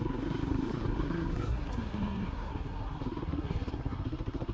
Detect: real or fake fake